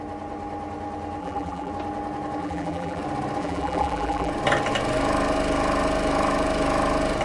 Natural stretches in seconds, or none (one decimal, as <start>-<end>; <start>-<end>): 0.0-1.2; 1.7-2.4; 3.0-3.4; 4.3-7.2